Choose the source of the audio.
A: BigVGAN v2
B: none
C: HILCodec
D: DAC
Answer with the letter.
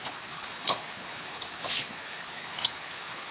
C